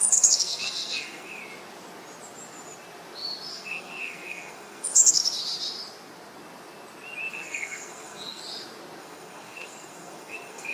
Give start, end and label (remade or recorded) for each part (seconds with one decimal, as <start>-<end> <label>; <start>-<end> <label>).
0.0-1.4 remade; 1.4-3.5 recorded; 3.5-5.2 remade; 5.2-7.3 recorded; 7.3-8.4 remade; 8.4-9.0 recorded; 9.0-10.7 remade